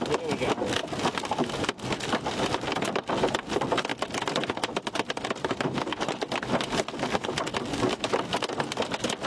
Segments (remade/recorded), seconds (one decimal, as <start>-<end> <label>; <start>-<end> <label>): 0.0-0.8 recorded; 0.8-2.5 remade; 2.5-3.9 recorded; 3.9-7.1 remade; 7.1-9.3 recorded